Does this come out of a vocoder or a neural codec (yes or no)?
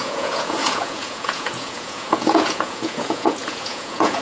yes